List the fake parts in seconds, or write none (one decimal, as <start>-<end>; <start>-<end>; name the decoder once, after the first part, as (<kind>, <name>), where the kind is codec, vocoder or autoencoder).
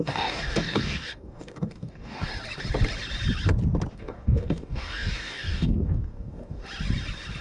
0.0-2.3 (codec, DAC); 3.9-6.6